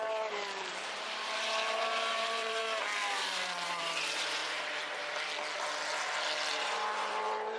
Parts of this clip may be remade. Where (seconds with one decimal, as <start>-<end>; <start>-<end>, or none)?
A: 0.0-2.6; 3.2-4.4; 6.5-7.6